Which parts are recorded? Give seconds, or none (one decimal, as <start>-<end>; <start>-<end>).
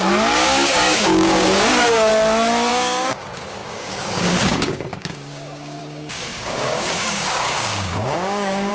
2.1-2.7